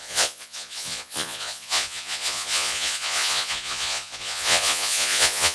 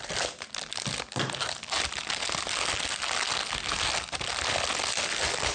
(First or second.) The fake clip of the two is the first